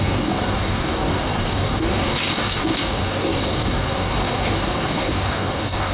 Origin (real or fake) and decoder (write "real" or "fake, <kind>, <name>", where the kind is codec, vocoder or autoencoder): fake, codec, DAC